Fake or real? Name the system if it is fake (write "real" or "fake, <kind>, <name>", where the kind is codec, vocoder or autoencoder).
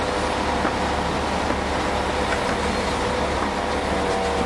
real